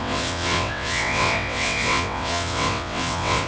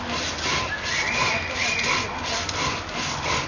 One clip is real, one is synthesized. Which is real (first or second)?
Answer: second